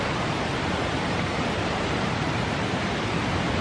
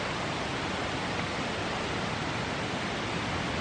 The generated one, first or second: first